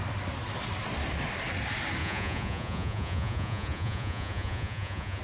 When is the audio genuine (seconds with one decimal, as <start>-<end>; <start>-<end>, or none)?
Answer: 0.0-2.0